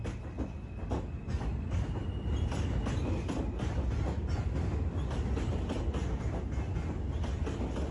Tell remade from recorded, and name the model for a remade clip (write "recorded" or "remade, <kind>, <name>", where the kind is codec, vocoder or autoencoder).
recorded